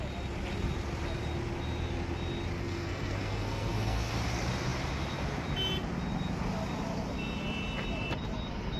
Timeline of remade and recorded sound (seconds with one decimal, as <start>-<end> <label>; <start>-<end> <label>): 0.0-2.6 recorded; 2.6-4.1 remade; 4.1-8.8 recorded